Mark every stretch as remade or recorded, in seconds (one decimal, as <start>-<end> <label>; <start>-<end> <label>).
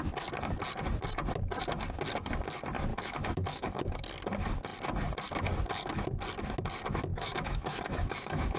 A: 0.0-2.9 recorded; 2.9-4.0 remade; 4.0-7.1 recorded; 7.1-8.6 remade